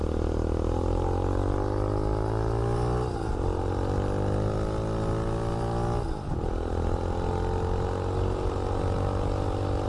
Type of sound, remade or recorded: recorded